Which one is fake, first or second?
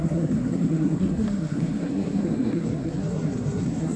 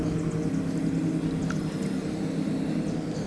first